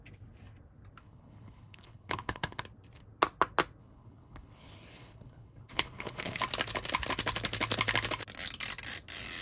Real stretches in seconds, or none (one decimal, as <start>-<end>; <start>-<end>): 0.0-1.0; 2.6-3.8; 6.4-9.4